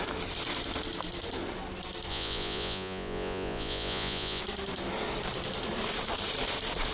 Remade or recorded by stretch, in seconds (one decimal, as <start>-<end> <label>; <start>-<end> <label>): 0.0-2.1 recorded; 2.1-4.4 remade; 4.4-6.9 recorded